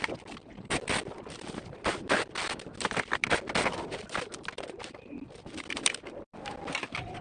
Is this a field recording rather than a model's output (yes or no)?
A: no